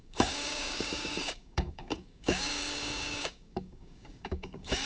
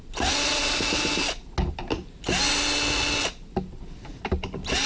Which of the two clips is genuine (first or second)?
second